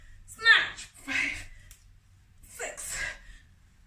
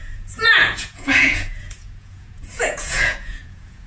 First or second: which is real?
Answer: first